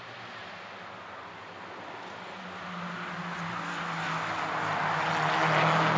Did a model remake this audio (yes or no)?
no